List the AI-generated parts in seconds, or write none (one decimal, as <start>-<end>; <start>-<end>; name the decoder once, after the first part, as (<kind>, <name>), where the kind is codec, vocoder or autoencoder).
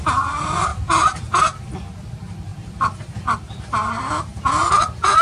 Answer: none